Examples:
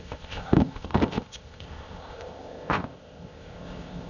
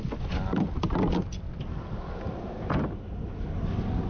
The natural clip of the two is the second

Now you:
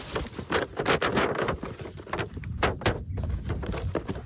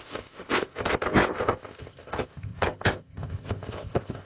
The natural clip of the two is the first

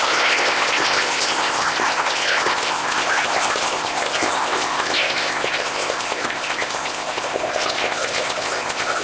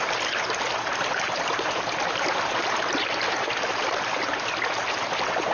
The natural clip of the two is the second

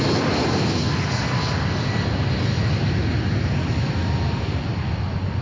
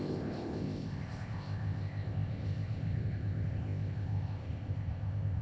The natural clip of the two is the first